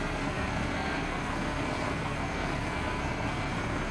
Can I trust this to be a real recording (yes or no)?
no